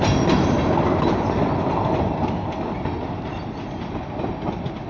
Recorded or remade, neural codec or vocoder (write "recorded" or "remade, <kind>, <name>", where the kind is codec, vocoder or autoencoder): recorded